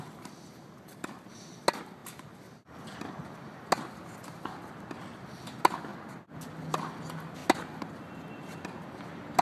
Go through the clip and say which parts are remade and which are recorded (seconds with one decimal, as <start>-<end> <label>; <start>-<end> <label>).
0.0-9.4 recorded